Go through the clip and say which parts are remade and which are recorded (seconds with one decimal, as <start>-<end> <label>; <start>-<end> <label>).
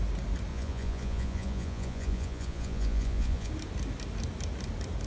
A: 0.0-0.5 recorded; 0.5-3.5 remade; 3.5-5.1 recorded